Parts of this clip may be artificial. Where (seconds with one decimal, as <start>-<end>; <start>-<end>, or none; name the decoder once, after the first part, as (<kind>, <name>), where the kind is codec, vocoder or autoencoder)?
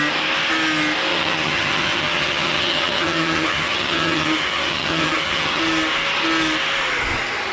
1.1-5.6 (vocoder, HiFi-GAN)